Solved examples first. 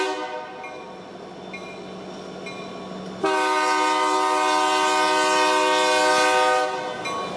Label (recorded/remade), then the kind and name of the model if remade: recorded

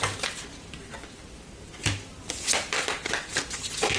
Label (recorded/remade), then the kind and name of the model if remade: recorded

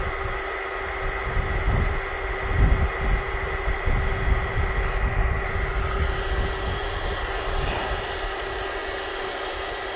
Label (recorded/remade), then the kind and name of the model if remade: recorded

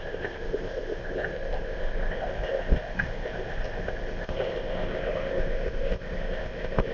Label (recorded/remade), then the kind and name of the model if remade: remade, codec, ZipCodec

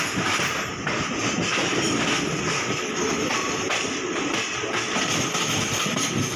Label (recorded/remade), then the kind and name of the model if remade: recorded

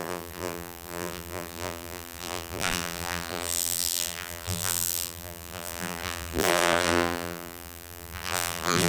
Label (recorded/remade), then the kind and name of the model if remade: remade, vocoder, BigVGAN v2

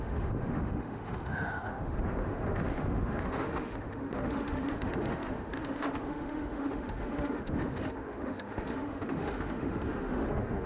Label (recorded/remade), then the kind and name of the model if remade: remade, autoencoder, DAC-VAE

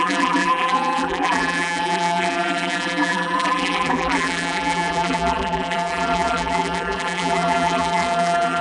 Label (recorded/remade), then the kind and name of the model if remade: remade, vocoder, BigVGAN v2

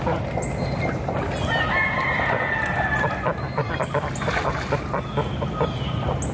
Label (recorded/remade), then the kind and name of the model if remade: recorded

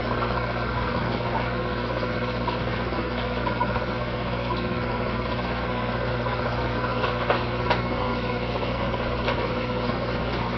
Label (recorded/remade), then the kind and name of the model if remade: remade, codec, SNAC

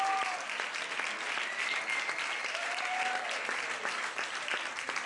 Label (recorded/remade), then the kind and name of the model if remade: recorded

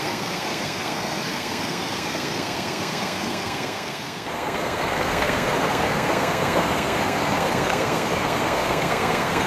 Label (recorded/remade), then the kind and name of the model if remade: remade, codec, SNAC